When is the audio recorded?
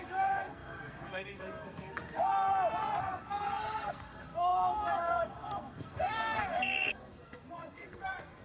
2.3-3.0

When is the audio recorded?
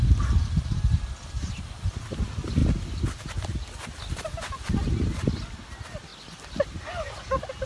0.0-7.7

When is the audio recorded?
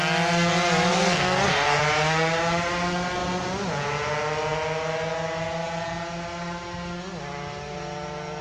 0.0-0.9; 1.8-8.4